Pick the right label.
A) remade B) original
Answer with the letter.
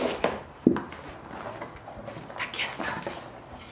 B